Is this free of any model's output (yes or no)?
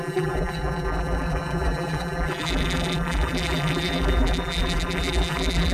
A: no